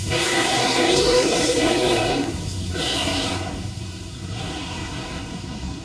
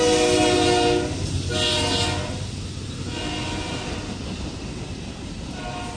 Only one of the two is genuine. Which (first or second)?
second